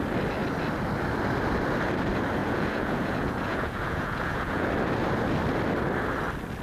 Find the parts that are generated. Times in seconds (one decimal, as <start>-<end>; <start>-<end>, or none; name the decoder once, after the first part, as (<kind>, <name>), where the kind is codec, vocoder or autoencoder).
2.4-4.7 (vocoder, Vocos)